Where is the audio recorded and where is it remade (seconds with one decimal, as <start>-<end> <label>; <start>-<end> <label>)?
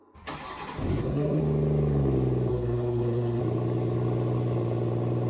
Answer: 0.0-0.9 recorded; 0.9-1.4 remade; 1.4-2.5 recorded; 2.5-3.4 remade; 3.4-5.3 recorded